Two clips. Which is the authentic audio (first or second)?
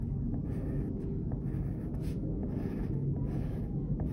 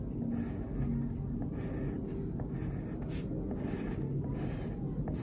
second